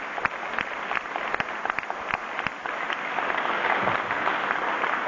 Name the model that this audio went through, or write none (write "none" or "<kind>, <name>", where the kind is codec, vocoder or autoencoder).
none